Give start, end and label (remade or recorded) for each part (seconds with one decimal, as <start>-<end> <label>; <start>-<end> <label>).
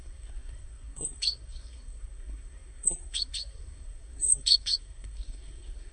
0.0-5.9 remade